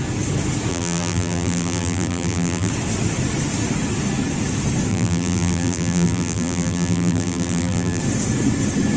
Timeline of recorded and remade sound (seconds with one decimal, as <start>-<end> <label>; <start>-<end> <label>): 0.0-0.7 recorded; 0.7-2.7 remade; 2.7-4.9 recorded; 4.9-8.0 remade; 8.0-9.0 recorded